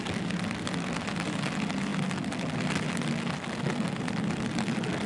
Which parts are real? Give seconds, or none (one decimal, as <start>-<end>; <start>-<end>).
0.0-5.1